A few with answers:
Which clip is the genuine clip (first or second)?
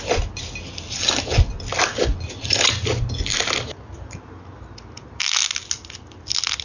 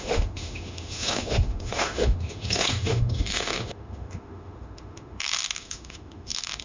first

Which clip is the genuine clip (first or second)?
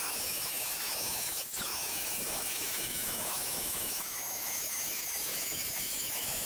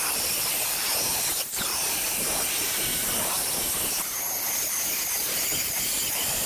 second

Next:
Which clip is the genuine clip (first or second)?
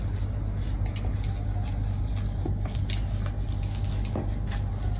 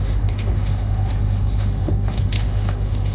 first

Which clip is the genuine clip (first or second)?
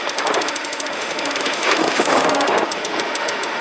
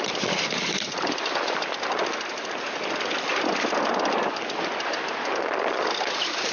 second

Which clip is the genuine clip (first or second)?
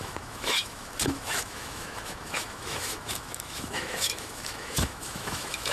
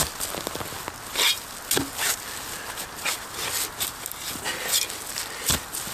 second